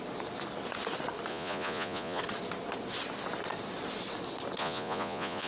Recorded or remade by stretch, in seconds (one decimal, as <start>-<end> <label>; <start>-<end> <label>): 0.0-1.3 recorded; 1.3-2.2 remade; 2.2-4.6 recorded; 4.6-5.5 remade